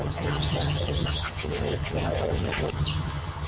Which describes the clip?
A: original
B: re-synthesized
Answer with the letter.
B